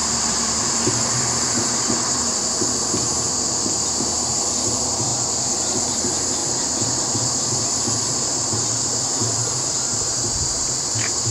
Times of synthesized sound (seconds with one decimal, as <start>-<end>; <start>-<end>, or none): 0.0-4.2; 6.4-8.1